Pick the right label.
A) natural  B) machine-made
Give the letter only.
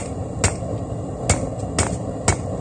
A